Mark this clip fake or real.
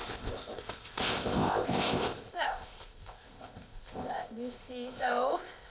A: fake